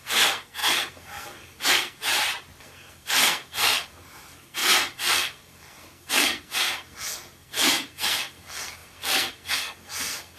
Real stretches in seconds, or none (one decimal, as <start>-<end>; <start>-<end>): 2.1-2.6